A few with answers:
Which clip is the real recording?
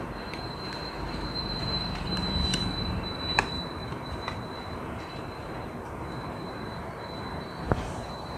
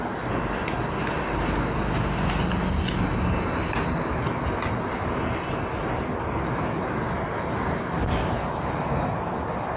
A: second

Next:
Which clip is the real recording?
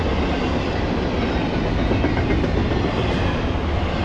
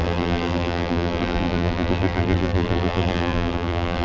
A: first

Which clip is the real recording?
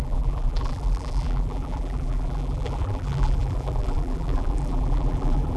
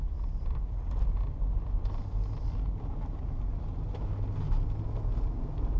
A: second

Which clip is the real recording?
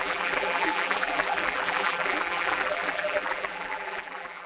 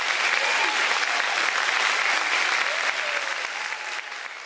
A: second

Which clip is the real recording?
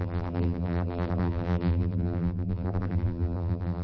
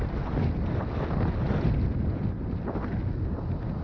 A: second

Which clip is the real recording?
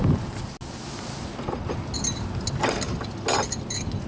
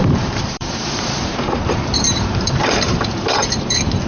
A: first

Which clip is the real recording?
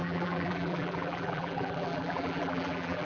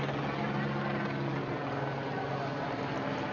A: second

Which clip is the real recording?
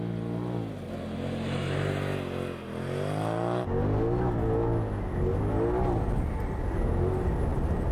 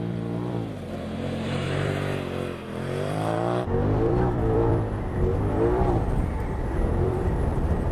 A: first